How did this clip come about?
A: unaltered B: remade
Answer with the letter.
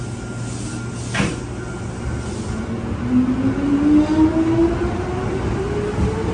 A